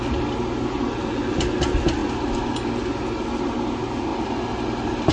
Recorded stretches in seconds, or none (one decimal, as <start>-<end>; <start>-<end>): 0.0-5.1